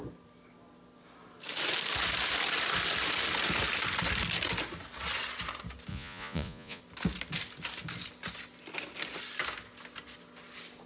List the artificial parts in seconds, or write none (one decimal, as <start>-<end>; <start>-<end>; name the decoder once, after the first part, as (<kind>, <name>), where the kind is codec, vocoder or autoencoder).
5.9-6.8 (vocoder, Vocos)